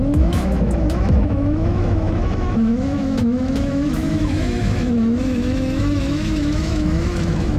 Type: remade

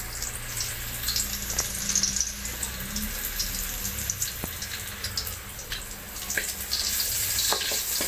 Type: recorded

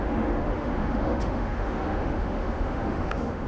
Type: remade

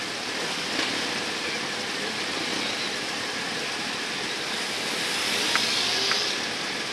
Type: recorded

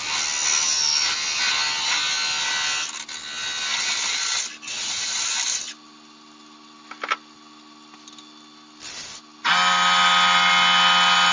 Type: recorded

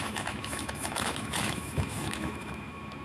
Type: remade